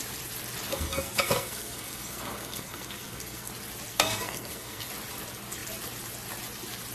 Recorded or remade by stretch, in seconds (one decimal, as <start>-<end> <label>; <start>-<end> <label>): 0.0-0.7 recorded; 0.7-3.5 remade; 3.5-3.9 recorded; 3.9-4.9 remade; 4.9-6.9 recorded